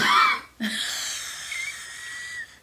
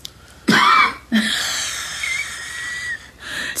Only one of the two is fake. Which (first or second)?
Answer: second